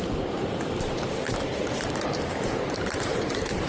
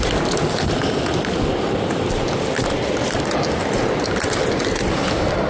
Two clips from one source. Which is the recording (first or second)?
second